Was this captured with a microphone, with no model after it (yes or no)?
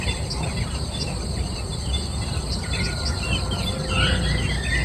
yes